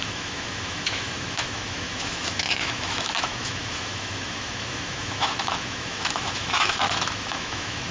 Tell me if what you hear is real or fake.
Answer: fake